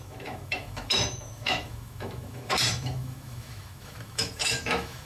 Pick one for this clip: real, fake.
fake